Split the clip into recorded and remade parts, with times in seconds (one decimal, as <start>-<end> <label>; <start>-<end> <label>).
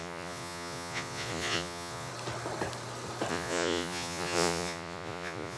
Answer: 0.0-2.1 remade; 2.1-3.3 recorded; 3.3-5.6 remade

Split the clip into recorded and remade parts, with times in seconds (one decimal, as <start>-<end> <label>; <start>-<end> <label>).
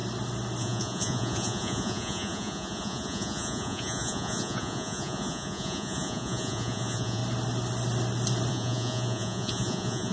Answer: 0.0-0.6 recorded; 0.6-7.2 remade; 7.2-8.5 recorded; 8.5-10.1 remade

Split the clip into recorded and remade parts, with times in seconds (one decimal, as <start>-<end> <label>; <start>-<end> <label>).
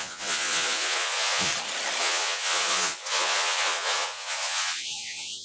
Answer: 0.0-1.5 remade; 1.5-2.0 recorded; 2.0-5.4 remade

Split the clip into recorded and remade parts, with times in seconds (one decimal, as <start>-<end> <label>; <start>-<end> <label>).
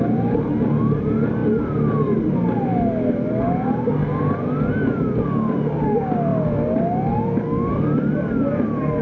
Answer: 0.0-9.0 recorded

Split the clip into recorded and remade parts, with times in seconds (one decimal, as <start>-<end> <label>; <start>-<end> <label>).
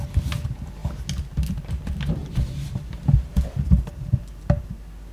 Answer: 0.0-5.1 recorded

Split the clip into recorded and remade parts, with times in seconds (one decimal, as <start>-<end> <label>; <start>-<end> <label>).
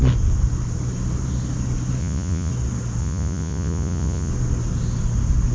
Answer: 0.0-2.0 recorded; 2.0-2.5 remade; 2.5-3.0 recorded; 3.0-4.3 remade; 4.3-5.5 recorded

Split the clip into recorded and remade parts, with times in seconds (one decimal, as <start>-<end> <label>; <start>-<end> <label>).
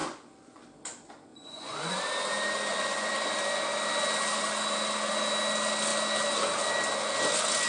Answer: 0.0-0.6 remade; 0.6-1.3 recorded; 1.3-2.0 remade; 2.0-2.7 recorded; 2.7-3.3 remade; 3.3-7.7 recorded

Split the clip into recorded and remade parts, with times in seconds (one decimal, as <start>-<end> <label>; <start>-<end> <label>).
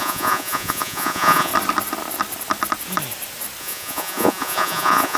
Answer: 0.0-1.5 remade; 1.5-3.6 recorded; 3.6-5.2 remade